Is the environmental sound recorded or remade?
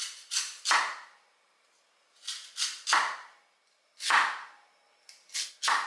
recorded